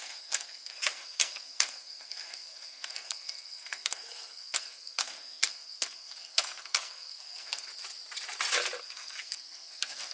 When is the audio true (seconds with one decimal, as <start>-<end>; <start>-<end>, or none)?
7.7-8.8